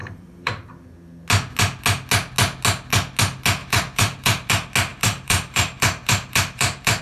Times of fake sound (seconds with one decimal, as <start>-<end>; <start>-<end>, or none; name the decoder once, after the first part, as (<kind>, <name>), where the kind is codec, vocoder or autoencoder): 0.0-0.7 (vocoder, BigVGAN v2); 3.6-4.5; 4.9-7.0